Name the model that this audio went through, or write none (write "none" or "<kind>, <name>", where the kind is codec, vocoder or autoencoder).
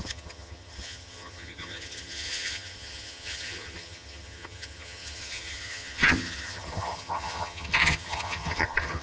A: vocoder, HiFi-GAN